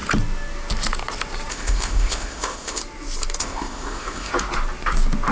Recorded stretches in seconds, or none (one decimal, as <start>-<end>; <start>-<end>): 0.0-1.5; 2.8-3.4; 4.3-5.3